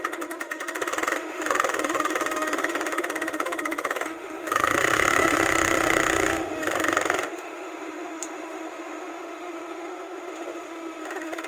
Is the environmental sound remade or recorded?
remade